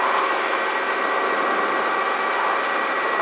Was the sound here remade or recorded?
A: recorded